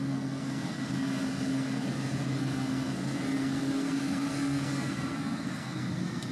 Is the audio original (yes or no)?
no